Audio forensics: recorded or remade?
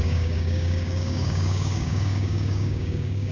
remade